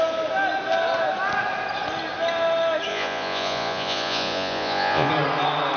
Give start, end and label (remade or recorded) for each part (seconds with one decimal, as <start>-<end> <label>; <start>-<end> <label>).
0.0-2.9 recorded; 2.9-5.1 remade; 5.1-5.8 recorded